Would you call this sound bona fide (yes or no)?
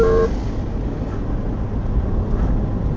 yes